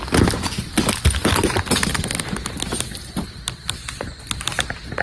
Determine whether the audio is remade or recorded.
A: recorded